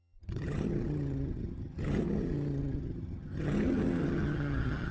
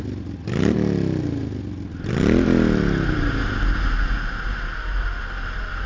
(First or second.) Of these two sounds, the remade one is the first